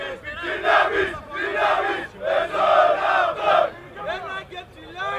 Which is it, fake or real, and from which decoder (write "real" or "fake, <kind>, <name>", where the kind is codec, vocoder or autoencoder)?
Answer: real